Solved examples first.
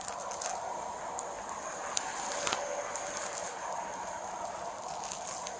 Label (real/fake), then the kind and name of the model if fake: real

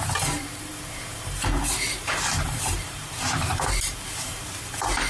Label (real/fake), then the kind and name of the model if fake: fake, vocoder, BigVGAN v2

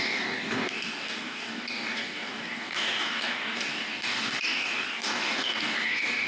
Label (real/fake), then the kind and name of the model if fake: fake, codec, DAC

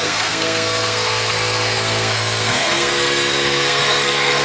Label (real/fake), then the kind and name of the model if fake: fake, codec, SNAC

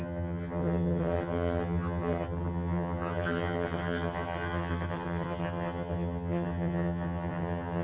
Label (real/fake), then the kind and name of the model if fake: fake, vocoder, HiFi-GAN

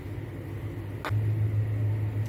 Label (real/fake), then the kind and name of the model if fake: real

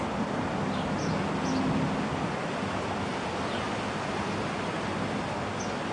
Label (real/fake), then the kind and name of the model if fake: real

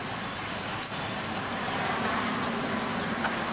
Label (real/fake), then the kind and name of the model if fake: real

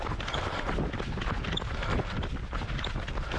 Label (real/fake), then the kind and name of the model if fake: real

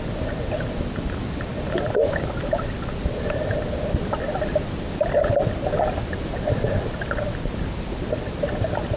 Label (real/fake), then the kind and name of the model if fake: real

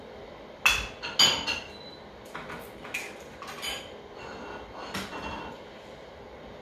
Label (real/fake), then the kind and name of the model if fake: real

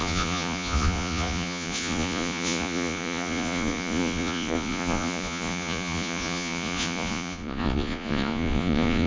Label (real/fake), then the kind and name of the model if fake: fake, vocoder, Vocos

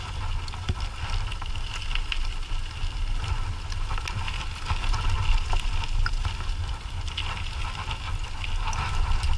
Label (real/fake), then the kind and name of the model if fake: real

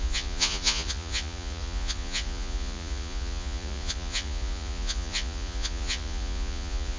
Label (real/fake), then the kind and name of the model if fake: fake, vocoder, Vocos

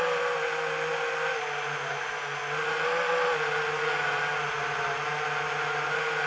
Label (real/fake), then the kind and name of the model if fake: real